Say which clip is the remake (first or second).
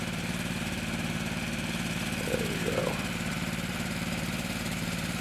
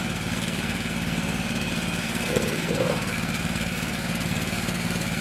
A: second